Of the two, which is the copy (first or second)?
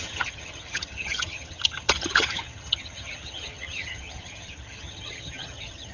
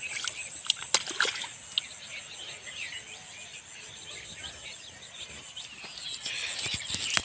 first